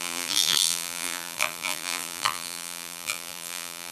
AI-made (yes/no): yes